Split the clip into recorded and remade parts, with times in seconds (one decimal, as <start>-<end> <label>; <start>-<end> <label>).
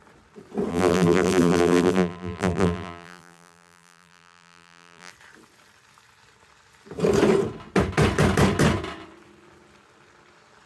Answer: 0.0-0.7 recorded; 0.7-5.1 remade; 5.1-10.7 recorded